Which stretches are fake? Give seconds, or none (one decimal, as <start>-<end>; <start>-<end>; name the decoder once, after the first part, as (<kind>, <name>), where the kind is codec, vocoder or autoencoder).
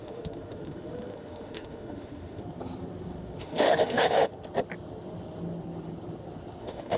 0.0-2.4 (autoencoder, DAC-VAE); 3.4-4.3; 6.6-7.0